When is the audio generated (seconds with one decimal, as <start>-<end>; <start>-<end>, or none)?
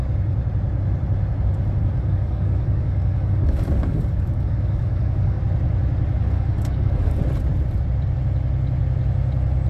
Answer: 1.8-5.4; 6.2-7.2